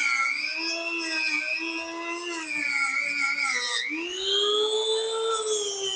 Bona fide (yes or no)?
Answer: yes